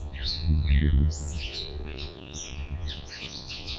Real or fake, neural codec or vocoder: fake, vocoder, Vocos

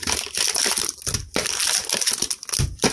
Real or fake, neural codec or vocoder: real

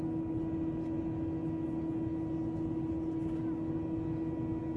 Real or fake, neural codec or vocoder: real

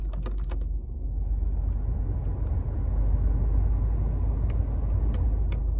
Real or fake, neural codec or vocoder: real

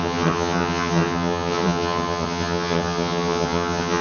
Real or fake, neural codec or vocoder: fake, vocoder, HiFi-GAN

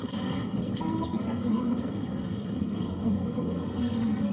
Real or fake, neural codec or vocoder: fake, codec, SNAC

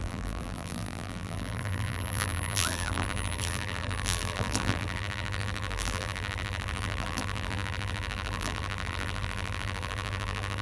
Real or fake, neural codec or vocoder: fake, vocoder, BigVGAN v2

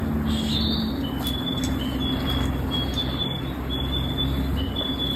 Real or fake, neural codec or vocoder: real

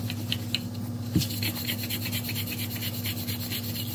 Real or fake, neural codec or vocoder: real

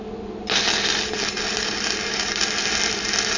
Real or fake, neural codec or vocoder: real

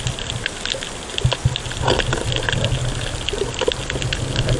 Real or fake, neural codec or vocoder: real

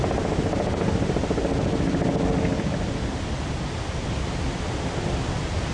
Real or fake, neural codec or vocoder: real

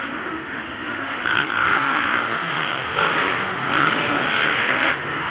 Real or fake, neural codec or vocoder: fake, autoencoder, DAC-VAE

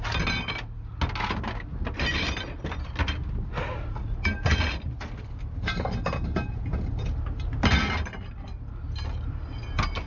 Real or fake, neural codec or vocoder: real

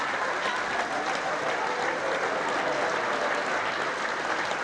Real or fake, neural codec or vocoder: real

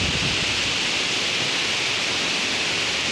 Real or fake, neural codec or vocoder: real